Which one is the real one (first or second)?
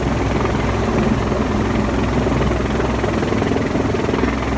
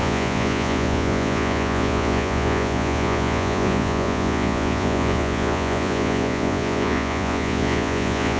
first